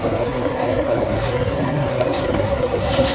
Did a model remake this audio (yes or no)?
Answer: yes